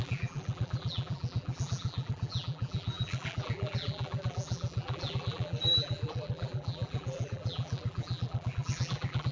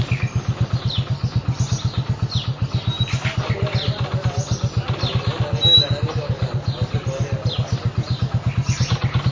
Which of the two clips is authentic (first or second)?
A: second